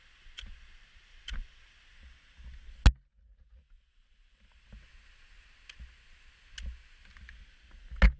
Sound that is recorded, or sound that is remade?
recorded